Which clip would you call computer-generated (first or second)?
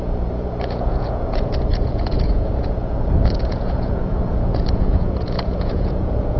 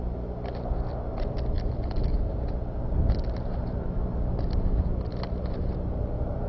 first